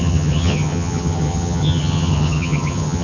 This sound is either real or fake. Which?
fake